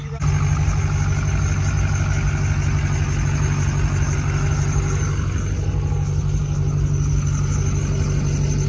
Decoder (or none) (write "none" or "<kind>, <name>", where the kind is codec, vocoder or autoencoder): none